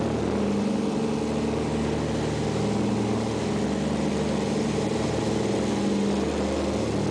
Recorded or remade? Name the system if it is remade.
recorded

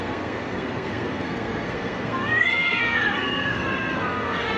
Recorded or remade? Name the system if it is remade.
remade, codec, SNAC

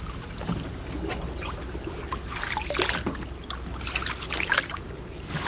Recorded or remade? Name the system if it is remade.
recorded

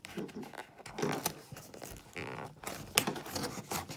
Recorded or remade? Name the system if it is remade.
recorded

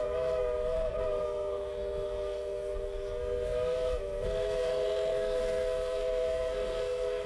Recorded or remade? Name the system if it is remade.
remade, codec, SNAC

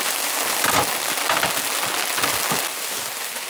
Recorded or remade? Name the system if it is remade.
recorded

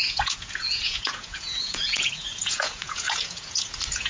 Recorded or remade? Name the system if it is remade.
remade, vocoder, Vocos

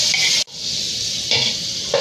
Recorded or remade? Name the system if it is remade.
recorded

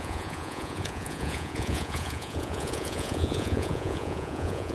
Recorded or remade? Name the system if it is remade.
remade, vocoder, Vocos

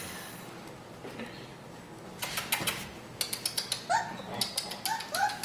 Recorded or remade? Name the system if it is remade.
recorded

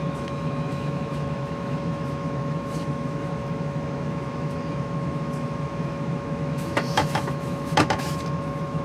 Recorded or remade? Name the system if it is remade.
remade, autoencoder, DAC-VAE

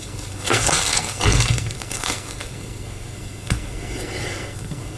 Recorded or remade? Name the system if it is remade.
remade, codec, SNAC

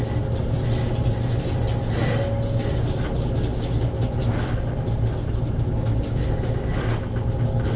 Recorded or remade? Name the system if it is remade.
recorded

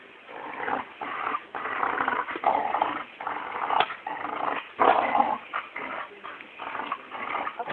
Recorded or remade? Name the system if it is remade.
recorded